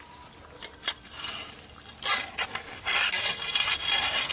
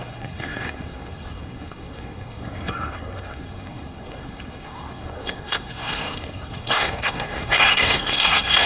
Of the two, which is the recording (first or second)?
first